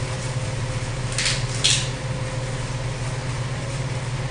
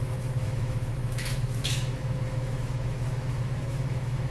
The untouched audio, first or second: first